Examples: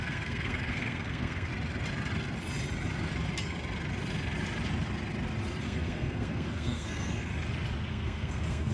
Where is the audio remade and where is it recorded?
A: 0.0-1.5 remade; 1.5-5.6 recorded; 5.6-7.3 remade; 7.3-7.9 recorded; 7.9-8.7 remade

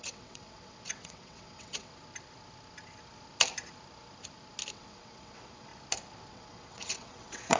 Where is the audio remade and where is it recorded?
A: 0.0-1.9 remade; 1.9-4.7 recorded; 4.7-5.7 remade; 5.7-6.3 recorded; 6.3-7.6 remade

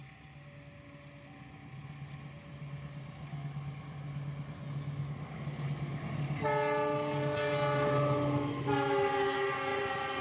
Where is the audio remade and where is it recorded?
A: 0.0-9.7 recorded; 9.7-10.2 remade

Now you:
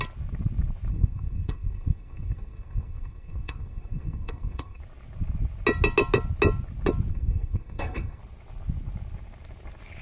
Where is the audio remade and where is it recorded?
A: 0.0-0.9 recorded; 0.9-4.8 remade; 4.8-7.1 recorded; 7.1-8.2 remade; 8.2-10.0 recorded